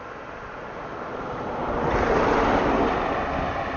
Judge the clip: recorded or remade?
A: recorded